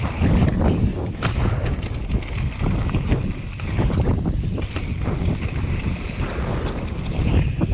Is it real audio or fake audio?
real